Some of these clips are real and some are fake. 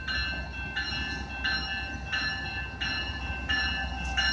real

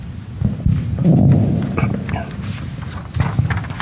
real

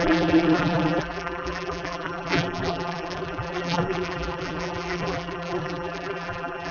fake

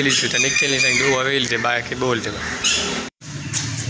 fake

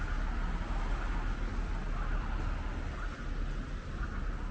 real